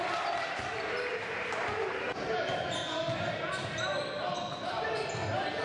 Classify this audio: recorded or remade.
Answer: recorded